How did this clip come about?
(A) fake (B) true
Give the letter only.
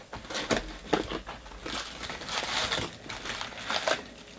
B